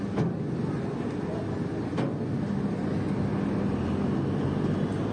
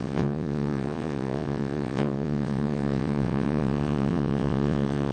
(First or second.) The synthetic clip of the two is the second